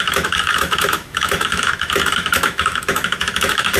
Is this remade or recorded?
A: remade